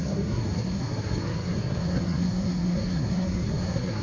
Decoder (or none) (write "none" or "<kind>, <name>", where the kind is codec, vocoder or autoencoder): codec, SNAC